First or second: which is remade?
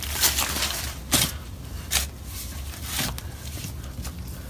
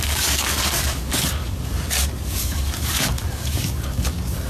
second